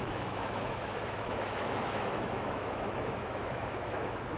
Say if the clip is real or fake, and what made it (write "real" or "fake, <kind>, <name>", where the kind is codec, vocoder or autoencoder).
fake, autoencoder, DAC-VAE